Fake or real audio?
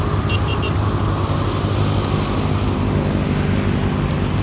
real